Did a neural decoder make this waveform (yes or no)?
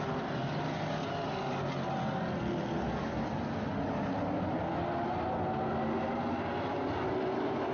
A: no